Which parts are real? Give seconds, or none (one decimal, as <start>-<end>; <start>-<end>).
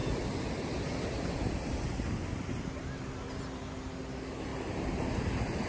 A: 0.0-5.7